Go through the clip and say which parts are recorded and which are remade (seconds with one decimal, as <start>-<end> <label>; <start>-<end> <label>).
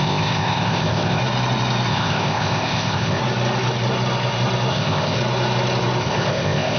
0.0-1.2 remade; 1.2-1.9 recorded; 1.9-3.2 remade; 3.2-4.7 recorded; 4.7-5.2 remade; 5.2-6.0 recorded; 6.0-6.8 remade